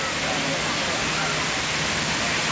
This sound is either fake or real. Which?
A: real